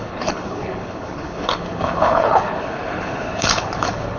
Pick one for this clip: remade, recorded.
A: remade